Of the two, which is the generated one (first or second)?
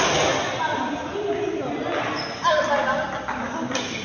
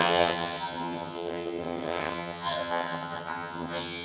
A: second